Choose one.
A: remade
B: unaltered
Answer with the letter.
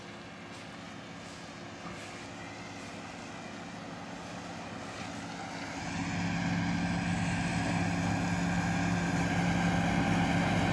B